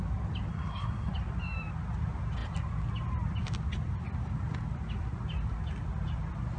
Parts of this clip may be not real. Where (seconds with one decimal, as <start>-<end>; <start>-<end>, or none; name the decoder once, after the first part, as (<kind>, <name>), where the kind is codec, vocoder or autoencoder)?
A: 0.5-1.1 (codec, SNAC)